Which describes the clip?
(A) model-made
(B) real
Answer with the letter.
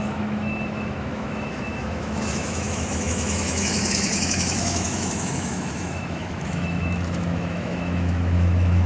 A